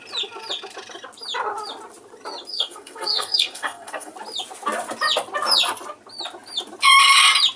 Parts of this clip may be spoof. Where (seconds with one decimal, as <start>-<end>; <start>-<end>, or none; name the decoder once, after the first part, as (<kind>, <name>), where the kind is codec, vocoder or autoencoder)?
2.5-4.1 (codec, SNAC)